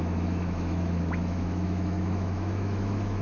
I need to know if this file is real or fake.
fake